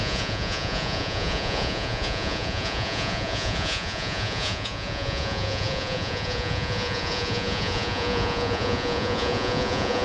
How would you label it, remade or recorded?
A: remade